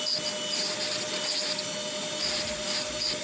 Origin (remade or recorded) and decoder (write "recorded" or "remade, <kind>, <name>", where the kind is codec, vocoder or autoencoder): recorded